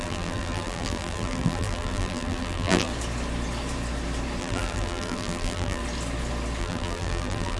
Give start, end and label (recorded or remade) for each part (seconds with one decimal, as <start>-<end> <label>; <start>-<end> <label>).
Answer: 0.0-2.9 remade; 2.9-4.4 recorded; 4.4-5.8 remade; 5.8-6.6 recorded; 6.6-7.6 remade